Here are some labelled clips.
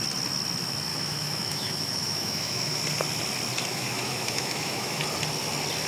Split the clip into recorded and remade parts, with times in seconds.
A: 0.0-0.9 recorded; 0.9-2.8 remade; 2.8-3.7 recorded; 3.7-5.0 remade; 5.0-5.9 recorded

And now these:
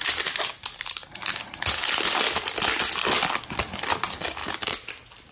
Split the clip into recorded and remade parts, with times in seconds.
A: 0.0-5.3 recorded

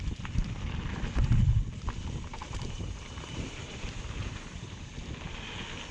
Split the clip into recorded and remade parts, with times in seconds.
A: 0.0-2.3 recorded; 2.3-4.9 remade; 4.9-5.9 recorded

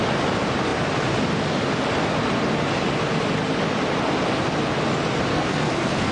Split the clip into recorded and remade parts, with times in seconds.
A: 0.0-5.3 recorded; 5.3-6.1 remade